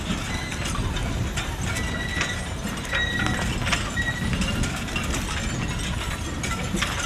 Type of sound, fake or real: real